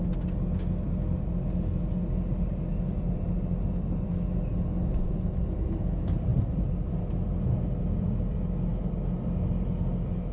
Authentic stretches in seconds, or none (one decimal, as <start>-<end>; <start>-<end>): 0.0-10.3